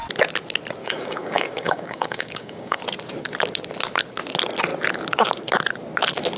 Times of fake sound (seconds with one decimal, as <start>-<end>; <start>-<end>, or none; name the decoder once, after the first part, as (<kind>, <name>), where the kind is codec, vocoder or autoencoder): 0.8-2.8 (codec, DAC)